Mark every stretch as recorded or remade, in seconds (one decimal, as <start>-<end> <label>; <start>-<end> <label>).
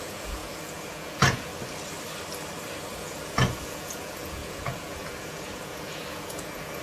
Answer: 0.0-1.5 remade; 1.5-3.0 recorded; 3.0-6.8 remade